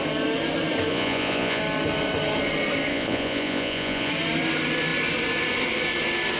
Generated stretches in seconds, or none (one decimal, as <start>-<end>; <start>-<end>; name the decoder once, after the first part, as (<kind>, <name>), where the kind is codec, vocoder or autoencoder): 0.9-1.6 (vocoder, Vocos); 2.9-4.1